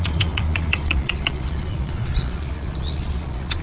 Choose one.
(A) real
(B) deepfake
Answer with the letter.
B